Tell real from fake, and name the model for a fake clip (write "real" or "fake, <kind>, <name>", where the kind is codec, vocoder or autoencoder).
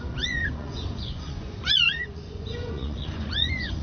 fake, vocoder, Vocos